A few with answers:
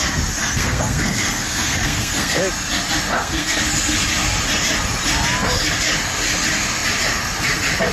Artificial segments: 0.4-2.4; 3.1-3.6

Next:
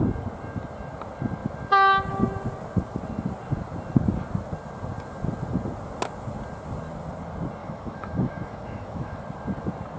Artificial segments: 7.6-9.2

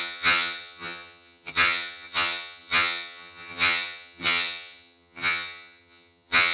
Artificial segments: 0.0-6.5

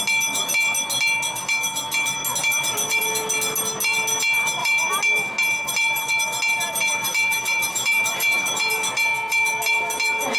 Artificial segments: 7.0-8.7

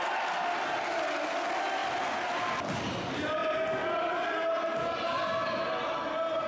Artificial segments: none

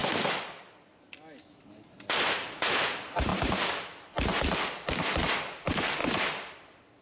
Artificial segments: none

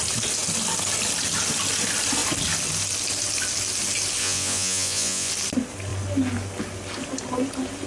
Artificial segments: 4.2-5.3